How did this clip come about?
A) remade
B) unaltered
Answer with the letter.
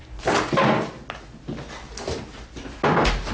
B